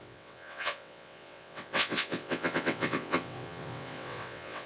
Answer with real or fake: fake